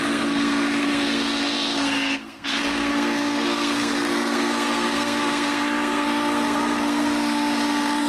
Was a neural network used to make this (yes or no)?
yes